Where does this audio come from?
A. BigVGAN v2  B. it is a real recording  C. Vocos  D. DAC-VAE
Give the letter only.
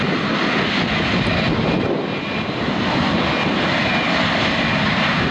B